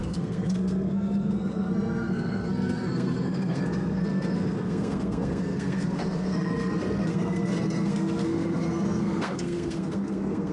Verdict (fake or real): fake